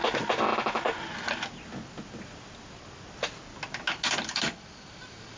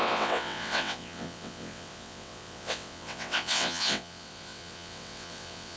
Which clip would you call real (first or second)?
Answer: first